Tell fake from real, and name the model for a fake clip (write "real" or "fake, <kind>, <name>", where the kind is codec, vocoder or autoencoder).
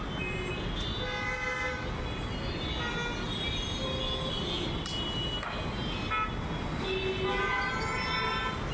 real